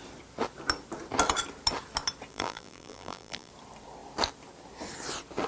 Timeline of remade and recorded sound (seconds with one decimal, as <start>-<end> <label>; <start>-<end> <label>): 0.0-2.3 recorded; 2.3-3.5 remade; 3.5-5.5 recorded